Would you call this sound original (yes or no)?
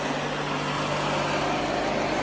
yes